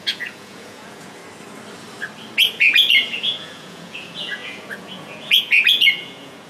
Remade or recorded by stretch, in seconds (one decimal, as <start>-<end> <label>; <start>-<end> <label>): 0.0-1.2 remade; 1.2-2.5 recorded; 2.5-6.5 remade